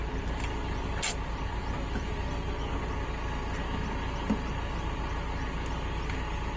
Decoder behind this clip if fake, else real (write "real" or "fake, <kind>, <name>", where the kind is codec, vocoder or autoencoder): real